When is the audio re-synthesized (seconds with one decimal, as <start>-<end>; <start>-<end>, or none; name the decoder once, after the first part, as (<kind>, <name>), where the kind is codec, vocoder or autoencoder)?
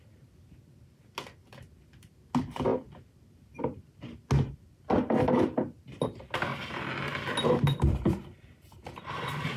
none